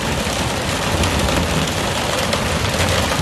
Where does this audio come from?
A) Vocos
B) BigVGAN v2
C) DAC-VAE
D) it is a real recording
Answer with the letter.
D